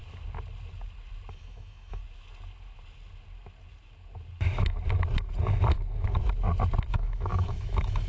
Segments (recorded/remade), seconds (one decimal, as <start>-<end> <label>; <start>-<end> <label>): 0.0-1.3 recorded; 1.3-2.0 remade; 2.0-6.9 recorded; 6.9-8.1 remade